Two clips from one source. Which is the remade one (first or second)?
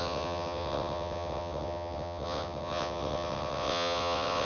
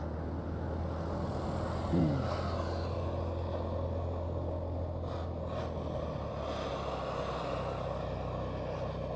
first